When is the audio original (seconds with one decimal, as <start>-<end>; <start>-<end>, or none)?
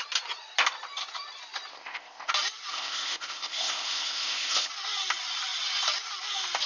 0.0-1.7; 2.3-2.7; 4.7-6.7